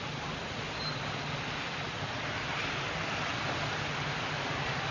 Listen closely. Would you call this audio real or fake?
real